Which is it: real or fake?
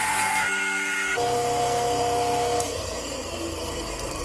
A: fake